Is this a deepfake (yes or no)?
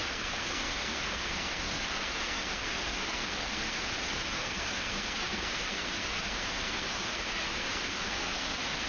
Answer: yes